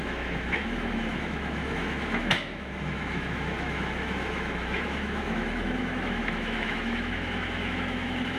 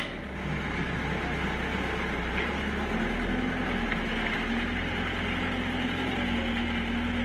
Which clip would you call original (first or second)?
second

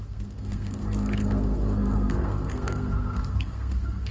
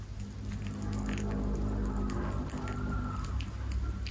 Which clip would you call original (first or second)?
second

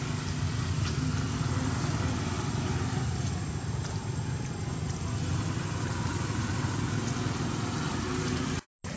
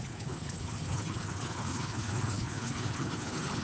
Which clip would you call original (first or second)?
first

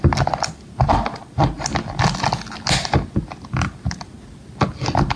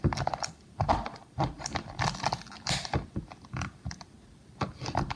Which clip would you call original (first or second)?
first